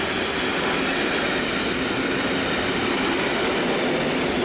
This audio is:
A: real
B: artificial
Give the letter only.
A